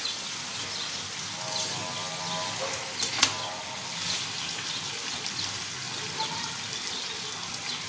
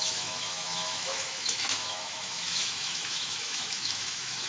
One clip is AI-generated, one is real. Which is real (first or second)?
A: first